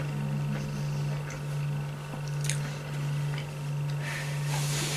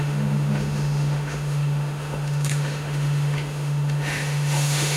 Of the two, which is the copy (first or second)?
second